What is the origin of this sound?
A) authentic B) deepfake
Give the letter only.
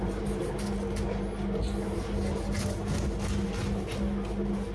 A